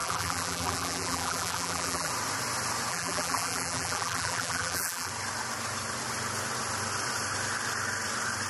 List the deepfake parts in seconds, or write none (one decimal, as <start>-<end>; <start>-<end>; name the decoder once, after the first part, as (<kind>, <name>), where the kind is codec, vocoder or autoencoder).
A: 0.0-2.1 (vocoder, BigVGAN v2); 2.9-5.1

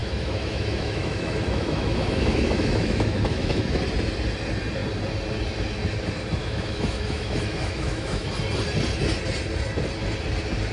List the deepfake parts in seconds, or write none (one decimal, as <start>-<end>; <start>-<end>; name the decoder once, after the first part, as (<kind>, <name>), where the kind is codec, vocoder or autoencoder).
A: 0.0-3.8 (autoencoder, DAC-VAE); 6.4-8.3

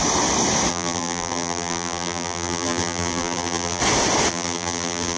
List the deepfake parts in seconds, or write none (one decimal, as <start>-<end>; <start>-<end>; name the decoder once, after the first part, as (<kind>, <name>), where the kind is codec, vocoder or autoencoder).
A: 0.7-3.8 (vocoder, BigVGAN v2); 4.3-5.2

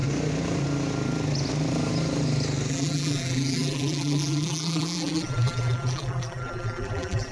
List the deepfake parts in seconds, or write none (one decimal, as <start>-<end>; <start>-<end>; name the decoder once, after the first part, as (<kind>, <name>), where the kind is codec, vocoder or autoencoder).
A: 2.7-7.3 (vocoder, BigVGAN v2)

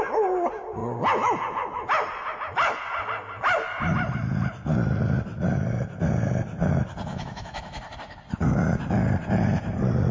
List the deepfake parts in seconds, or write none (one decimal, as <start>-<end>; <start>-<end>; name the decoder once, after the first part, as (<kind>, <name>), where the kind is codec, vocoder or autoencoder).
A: 7.1-7.8 (autoencoder, DAC-VAE)

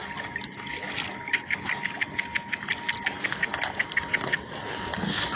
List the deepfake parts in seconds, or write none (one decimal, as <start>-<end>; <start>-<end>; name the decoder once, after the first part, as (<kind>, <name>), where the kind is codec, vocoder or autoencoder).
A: none

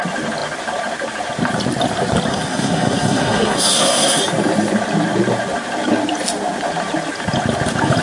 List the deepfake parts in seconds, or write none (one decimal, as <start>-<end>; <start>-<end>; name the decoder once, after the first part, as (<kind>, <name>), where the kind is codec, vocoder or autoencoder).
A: 2.3-4.2 (codec, SNAC)